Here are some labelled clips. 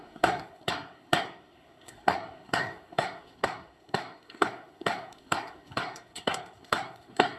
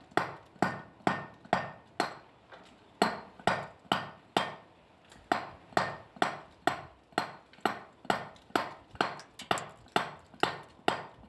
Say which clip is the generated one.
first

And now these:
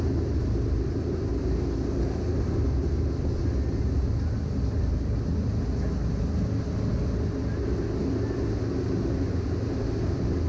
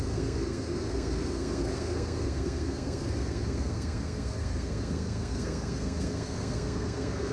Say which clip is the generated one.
second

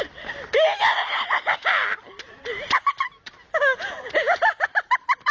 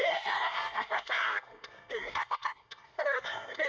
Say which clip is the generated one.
second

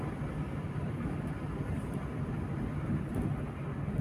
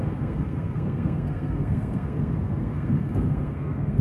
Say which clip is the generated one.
second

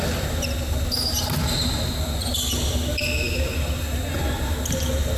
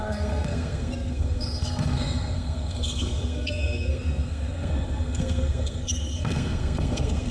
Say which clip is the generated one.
second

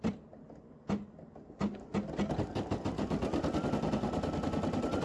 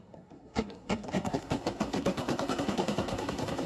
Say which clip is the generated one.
second